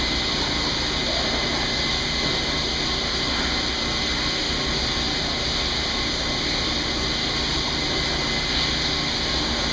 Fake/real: real